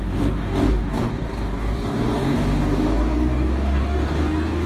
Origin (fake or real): fake